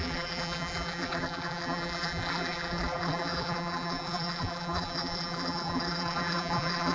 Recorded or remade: remade